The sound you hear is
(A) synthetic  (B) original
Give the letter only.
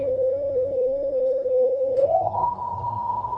A